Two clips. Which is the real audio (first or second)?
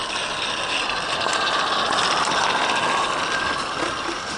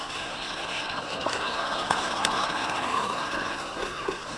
first